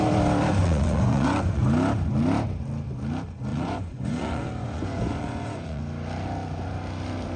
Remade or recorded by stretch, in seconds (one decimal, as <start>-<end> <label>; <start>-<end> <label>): 0.0-0.6 recorded; 0.6-1.6 remade; 1.6-3.5 recorded; 3.5-5.8 remade; 5.8-7.4 recorded